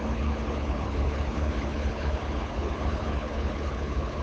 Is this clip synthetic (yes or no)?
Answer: yes